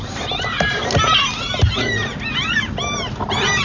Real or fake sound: real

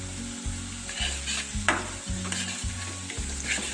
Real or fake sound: real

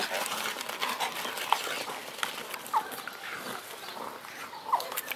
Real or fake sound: real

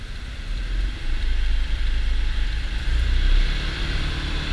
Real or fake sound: fake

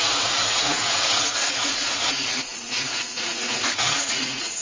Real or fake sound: fake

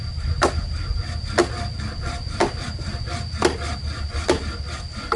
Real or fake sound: real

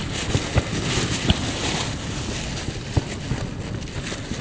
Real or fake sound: real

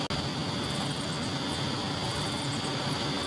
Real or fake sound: real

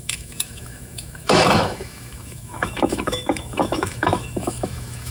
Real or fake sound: fake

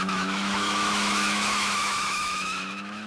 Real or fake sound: fake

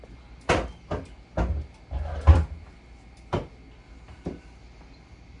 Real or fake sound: real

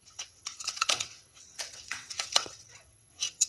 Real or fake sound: fake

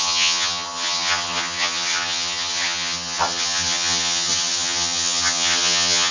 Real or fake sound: fake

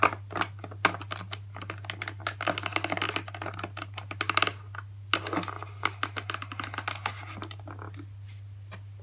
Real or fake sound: real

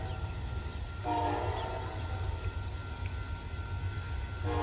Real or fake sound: real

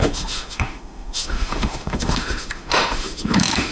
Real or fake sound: fake